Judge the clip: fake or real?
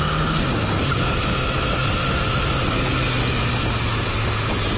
real